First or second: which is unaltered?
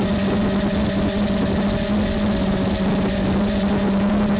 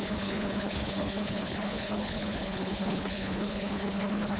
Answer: first